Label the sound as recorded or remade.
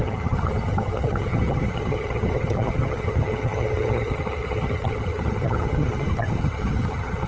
remade